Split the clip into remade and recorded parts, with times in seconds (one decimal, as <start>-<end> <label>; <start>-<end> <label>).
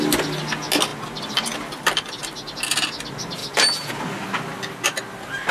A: 0.0-0.9 recorded; 0.9-2.2 remade; 2.2-3.4 recorded; 3.4-3.9 remade; 3.9-5.5 recorded